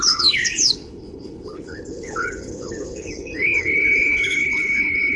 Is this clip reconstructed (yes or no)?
yes